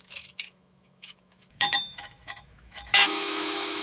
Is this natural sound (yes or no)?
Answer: no